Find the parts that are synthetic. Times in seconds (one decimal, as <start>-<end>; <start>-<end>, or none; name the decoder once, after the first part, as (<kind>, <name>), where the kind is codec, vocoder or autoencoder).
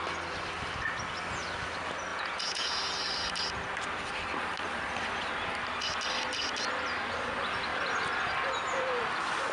2.1-2.8 (vocoder, Vocos)